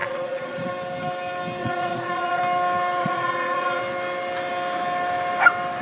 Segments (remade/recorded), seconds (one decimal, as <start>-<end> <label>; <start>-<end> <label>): 0.0-0.7 remade; 0.7-1.6 recorded; 1.6-2.4 remade; 2.4-3.0 recorded; 3.0-3.8 remade; 3.8-5.8 recorded